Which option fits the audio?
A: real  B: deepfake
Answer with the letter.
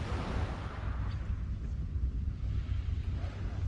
A